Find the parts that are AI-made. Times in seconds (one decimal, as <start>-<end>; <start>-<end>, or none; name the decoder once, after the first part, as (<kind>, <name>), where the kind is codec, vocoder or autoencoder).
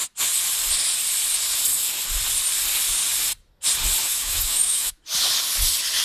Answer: 4.0-5.0 (autoencoder, DAC-VAE)